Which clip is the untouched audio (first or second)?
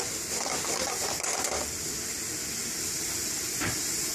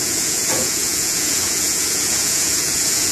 first